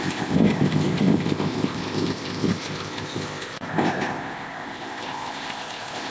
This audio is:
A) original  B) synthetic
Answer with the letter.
B